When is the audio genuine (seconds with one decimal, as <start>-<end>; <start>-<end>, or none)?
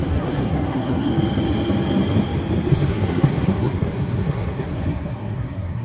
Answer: 1.1-2.7